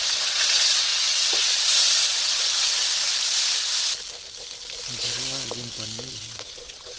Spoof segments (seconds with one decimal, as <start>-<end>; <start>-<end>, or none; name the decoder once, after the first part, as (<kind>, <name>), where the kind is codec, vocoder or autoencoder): 0.0-2.9 (vocoder, WaveNeXt); 6.1-7.0